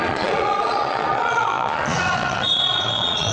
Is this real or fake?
fake